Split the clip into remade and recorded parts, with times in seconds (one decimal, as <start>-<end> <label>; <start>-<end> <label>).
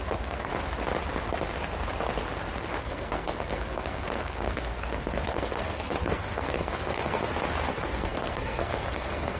0.0-0.5 remade; 0.5-2.8 recorded; 2.8-7.2 remade; 7.2-7.7 recorded; 7.7-9.4 remade